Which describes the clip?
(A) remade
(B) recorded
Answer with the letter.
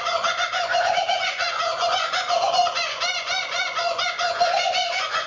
A